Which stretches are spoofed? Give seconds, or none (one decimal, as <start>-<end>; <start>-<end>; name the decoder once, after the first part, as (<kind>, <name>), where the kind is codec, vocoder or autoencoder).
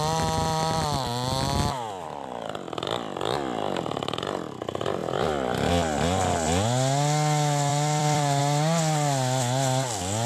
5.0-5.7 (vocoder, BigVGAN v2); 7.7-8.4